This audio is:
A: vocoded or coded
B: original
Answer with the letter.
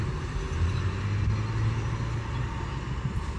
B